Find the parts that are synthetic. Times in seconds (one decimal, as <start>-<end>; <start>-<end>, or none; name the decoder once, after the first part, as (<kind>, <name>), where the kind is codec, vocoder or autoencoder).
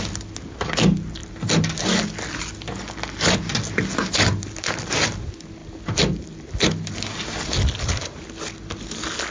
none